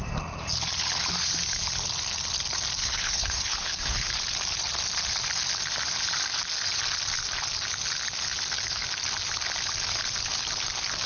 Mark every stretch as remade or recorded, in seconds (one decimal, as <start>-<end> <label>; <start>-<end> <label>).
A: 0.0-2.8 recorded; 2.8-4.1 remade; 4.1-11.1 recorded